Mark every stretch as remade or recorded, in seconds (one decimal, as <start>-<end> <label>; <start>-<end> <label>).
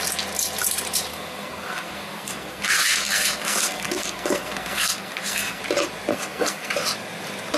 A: 0.0-1.1 recorded; 1.1-5.6 remade; 5.6-6.1 recorded; 6.1-6.7 remade; 6.7-7.6 recorded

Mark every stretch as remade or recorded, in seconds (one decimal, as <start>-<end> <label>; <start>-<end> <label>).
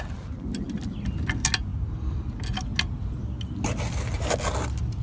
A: 0.0-5.0 recorded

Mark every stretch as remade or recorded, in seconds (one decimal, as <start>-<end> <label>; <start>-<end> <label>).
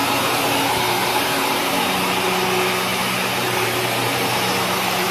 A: 0.0-1.6 remade; 1.6-2.9 recorded; 2.9-5.1 remade